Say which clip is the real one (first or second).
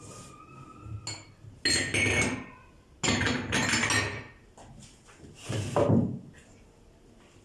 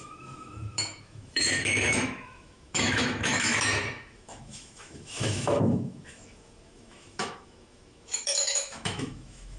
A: first